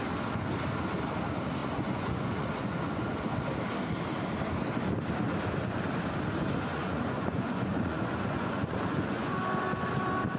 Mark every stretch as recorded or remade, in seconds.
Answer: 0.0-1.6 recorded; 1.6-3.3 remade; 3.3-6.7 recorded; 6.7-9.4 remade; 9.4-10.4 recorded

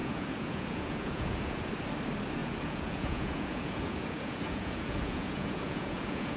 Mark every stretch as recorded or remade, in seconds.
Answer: 0.0-1.7 remade; 1.7-2.4 recorded; 2.4-6.4 remade

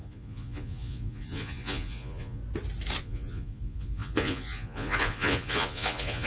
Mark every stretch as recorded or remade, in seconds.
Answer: 0.0-2.4 remade; 2.4-3.0 recorded; 3.0-6.3 remade

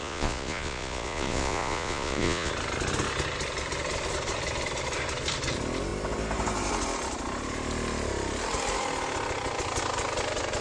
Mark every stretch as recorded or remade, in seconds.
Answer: 0.0-2.5 remade; 2.5-10.6 recorded

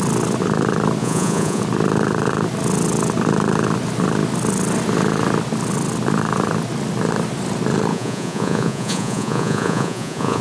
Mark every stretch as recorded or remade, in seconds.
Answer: 0.0-1.0 recorded; 1.0-1.6 remade; 1.6-7.9 recorded; 7.9-10.4 remade

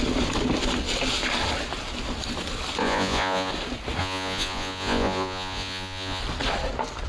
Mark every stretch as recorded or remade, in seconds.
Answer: 0.0-2.8 recorded; 2.8-3.5 remade; 3.5-4.0 recorded; 4.0-6.2 remade; 6.2-7.1 recorded

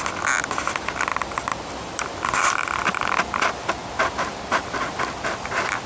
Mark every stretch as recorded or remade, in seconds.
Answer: 0.0-5.9 recorded